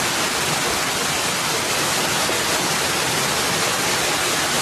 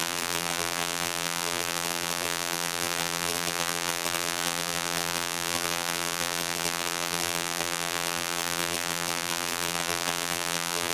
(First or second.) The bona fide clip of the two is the first